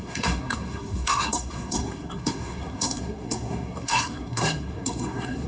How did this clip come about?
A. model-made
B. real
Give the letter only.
A